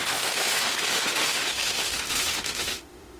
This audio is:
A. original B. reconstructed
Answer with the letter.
B